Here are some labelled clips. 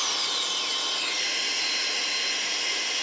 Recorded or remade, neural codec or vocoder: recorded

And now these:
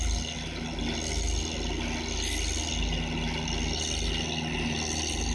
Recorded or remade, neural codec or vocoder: recorded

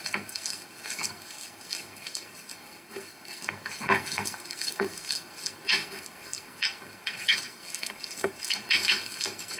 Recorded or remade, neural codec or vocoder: remade, codec, SNAC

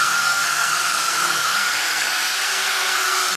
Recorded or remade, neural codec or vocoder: remade, codec, SNAC